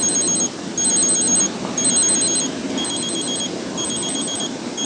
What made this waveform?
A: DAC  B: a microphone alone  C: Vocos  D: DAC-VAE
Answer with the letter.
B